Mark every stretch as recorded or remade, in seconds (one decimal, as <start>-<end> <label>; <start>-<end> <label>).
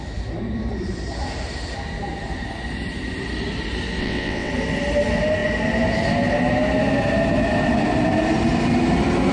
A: 0.0-4.0 recorded; 4.0-4.5 remade; 4.5-9.3 recorded